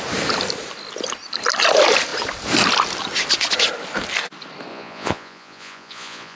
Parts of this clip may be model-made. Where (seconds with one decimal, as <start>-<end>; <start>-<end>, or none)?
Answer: 4.7-6.4